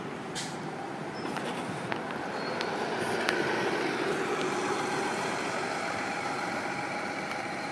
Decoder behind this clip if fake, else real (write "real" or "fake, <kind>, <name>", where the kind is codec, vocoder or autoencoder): fake, vocoder, BigVGAN v2